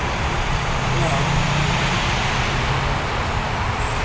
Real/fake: real